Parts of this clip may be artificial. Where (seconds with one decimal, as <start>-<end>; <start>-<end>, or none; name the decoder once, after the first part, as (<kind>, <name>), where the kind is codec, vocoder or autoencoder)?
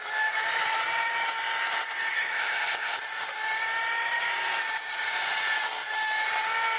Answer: 2.1-3.0 (codec, ZipCodec)